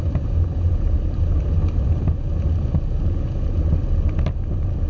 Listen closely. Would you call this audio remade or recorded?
recorded